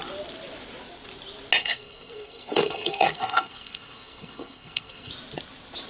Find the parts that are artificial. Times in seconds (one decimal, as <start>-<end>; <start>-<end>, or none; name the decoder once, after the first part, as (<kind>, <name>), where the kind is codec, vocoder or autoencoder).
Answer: 1.6-5.1 (codec, SNAC)